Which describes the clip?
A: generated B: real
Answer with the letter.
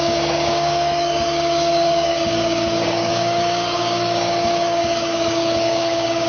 A